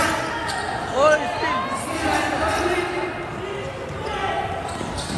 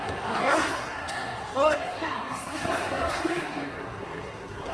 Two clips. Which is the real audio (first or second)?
first